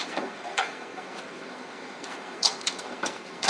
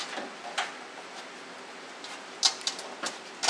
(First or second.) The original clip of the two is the second